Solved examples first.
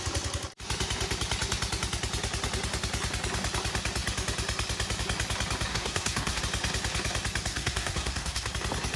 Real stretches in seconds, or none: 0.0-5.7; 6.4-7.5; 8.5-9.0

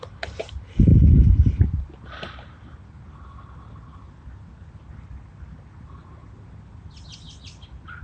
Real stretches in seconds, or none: 0.0-8.0